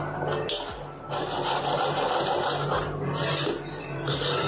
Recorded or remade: recorded